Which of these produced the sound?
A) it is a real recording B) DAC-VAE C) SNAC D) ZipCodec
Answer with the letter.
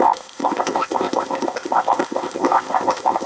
D